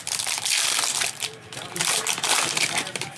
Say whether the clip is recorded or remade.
remade